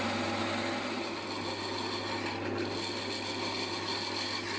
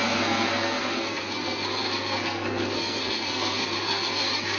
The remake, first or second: second